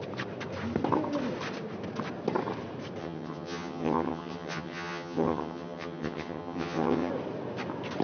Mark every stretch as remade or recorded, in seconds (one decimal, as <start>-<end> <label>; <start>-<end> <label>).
0.0-3.0 recorded; 3.0-7.1 remade; 7.1-8.0 recorded